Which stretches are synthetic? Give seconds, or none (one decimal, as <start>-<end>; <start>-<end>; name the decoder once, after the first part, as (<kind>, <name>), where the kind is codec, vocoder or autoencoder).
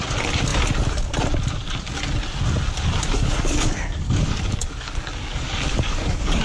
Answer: 3.1-6.4 (codec, DAC)